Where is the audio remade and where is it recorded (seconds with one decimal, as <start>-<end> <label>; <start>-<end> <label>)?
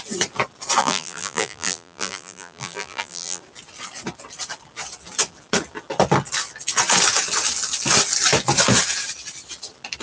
0.0-0.8 recorded; 0.8-3.4 remade; 3.4-10.0 recorded